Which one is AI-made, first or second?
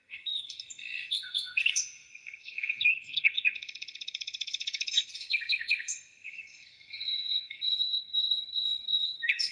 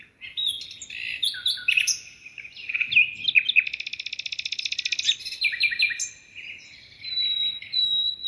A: first